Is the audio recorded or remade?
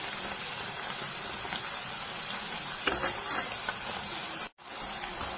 recorded